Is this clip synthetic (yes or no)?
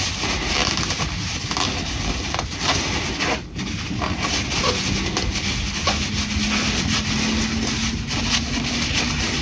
no